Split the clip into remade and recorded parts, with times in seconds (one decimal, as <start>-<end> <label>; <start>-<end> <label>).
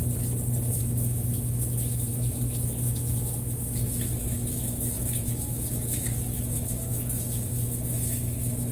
0.0-0.8 recorded; 0.8-8.7 remade